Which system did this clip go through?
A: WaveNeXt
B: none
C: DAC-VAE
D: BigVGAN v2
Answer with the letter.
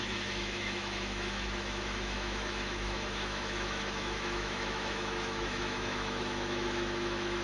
C